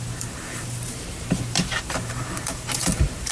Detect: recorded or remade remade